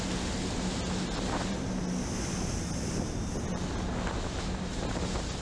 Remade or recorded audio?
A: recorded